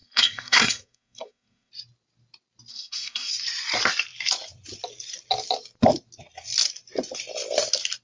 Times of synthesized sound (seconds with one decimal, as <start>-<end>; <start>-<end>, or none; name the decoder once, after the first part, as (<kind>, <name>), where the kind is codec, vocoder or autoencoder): 0.0-1.7 (codec, SNAC); 2.7-3.3